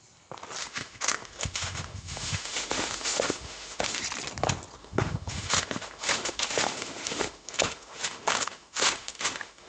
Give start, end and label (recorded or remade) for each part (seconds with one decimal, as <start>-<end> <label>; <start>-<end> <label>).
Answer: 0.0-0.6 recorded; 0.6-4.0 remade; 4.0-4.8 recorded; 4.8-9.7 remade